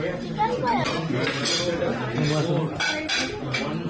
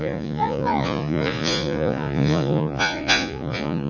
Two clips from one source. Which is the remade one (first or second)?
second